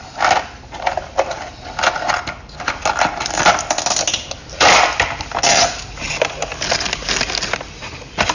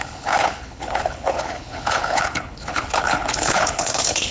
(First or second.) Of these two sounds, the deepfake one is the second